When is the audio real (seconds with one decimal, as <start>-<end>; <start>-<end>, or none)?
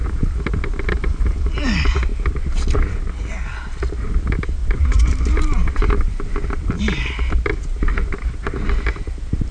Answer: 0.0-0.9; 1.4-4.6; 6.8-9.5